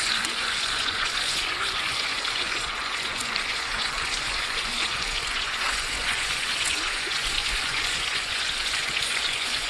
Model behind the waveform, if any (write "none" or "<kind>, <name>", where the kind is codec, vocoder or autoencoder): vocoder, Vocos